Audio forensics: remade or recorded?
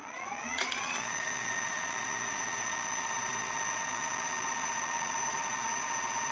remade